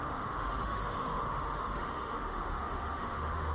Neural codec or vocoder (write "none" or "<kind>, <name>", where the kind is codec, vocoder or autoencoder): autoencoder, DAC-VAE